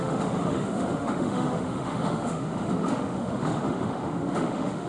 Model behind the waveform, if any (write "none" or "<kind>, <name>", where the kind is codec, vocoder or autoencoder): autoencoder, DAC-VAE